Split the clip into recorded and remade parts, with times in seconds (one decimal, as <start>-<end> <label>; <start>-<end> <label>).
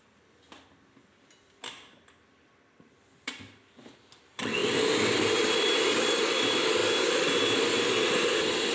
0.0-4.6 remade; 4.6-6.2 recorded; 6.2-6.8 remade; 6.8-8.7 recorded